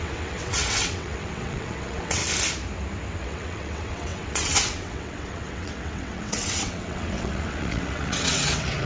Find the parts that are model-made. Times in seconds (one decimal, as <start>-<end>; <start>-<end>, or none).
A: 0.0-2.2; 3.2-8.9